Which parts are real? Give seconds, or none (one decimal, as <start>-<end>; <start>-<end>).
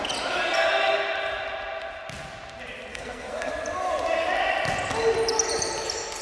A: 0.0-2.9; 3.5-6.2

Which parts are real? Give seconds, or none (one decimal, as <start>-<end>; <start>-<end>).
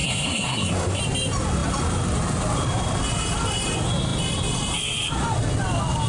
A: 1.0-6.1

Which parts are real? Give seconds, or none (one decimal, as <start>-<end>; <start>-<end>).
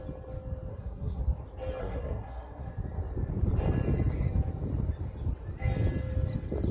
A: 0.0-0.7; 1.2-1.8; 2.7-6.7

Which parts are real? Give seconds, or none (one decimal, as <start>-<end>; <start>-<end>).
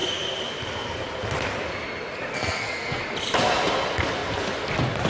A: 0.0-2.3; 3.0-5.1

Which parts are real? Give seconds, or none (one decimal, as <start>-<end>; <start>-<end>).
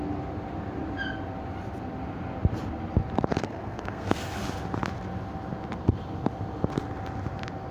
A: 0.0-3.4; 4.2-7.7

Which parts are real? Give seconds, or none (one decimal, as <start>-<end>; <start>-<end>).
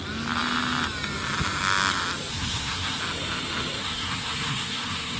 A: 0.0-2.3; 3.0-3.8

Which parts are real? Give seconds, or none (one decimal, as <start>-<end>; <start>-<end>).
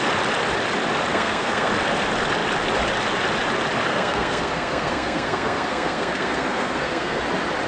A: 0.0-1.1; 1.7-3.9; 7.2-7.7